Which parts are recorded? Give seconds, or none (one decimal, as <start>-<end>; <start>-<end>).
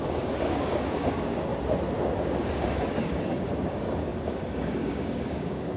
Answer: 1.5-2.2